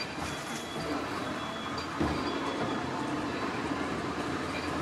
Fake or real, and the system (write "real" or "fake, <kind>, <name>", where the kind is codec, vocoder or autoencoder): fake, vocoder, BigVGAN v2